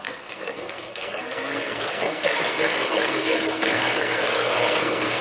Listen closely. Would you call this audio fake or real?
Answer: fake